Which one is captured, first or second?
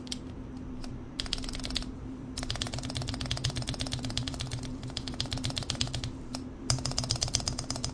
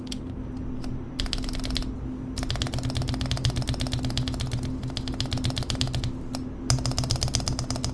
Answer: second